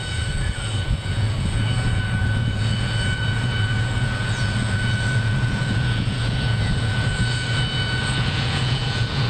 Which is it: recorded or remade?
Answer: remade